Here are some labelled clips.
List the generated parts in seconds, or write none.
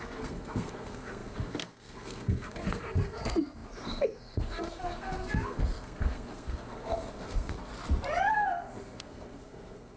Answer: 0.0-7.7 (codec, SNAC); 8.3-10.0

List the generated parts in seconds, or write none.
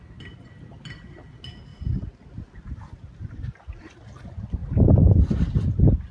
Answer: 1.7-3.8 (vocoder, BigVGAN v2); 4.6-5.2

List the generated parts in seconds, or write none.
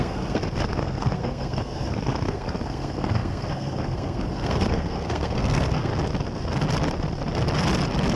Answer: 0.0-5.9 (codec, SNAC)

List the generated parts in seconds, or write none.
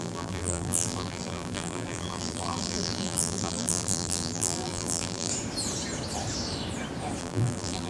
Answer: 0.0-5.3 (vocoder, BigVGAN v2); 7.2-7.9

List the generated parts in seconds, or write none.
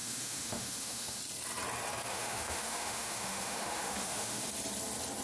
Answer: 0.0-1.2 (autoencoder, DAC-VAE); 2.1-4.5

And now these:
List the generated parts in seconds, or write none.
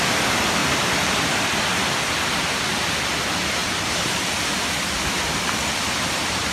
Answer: 0.6-1.6 (vocoder, BigVGAN v2); 3.6-4.3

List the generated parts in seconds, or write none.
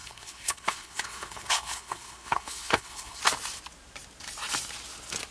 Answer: 0.0-3.2 (codec, HILCodec)